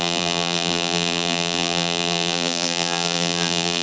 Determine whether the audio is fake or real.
fake